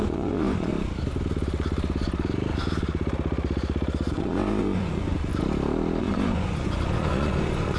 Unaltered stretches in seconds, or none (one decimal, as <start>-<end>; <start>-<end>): 0.7-4.1; 5.3-6.0